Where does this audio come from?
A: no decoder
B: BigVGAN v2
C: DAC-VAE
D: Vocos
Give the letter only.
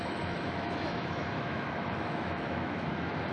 C